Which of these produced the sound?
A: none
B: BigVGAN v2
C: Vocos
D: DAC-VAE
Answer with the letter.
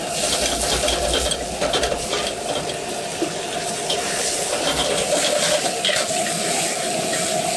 A